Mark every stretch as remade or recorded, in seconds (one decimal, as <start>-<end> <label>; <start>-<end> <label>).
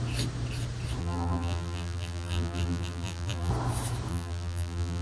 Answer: 0.0-1.0 recorded; 1.0-3.5 remade; 3.5-4.1 recorded; 4.1-5.0 remade